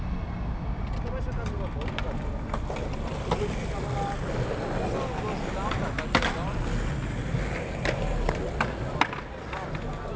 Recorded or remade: recorded